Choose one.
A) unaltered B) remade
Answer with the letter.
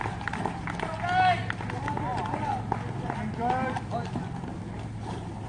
A